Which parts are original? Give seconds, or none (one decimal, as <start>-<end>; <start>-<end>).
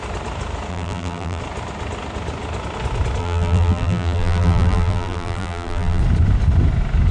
0.0-0.7; 1.4-3.2; 6.0-7.1